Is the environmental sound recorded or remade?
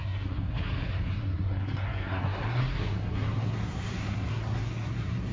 remade